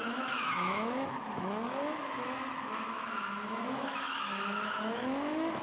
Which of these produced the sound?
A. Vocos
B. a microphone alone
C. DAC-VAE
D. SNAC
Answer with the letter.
C